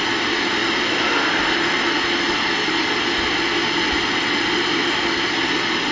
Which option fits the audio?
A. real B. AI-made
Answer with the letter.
A